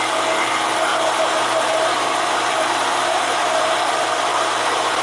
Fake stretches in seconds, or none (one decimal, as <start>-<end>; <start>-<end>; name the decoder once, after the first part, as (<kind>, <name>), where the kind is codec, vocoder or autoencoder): 0.9-3.9 (vocoder, BigVGAN v2); 4.3-5.0